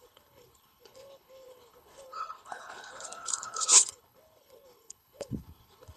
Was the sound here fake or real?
fake